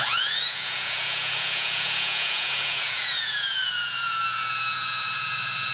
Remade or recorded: remade